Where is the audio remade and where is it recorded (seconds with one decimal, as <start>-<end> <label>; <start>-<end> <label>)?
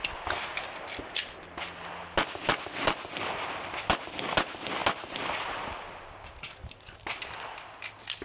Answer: 0.0-8.2 recorded